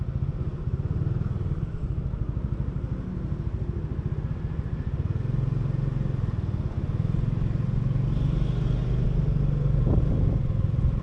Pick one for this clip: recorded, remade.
recorded